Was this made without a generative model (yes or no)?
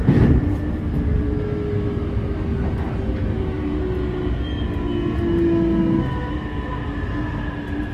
yes